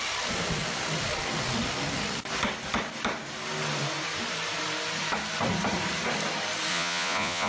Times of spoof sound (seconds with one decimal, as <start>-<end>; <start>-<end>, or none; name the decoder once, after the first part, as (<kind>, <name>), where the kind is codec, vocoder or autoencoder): 6.7-7.5 (vocoder, Vocos)